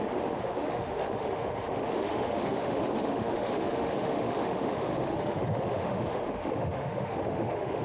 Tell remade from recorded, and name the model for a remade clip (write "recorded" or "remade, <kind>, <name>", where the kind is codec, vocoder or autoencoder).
remade, autoencoder, DAC-VAE